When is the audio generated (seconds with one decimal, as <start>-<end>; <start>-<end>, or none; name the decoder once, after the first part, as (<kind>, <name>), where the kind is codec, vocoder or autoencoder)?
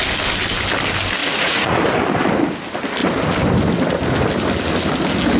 1.2-1.8 (vocoder, Vocos)